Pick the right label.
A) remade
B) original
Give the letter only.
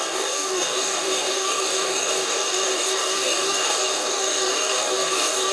A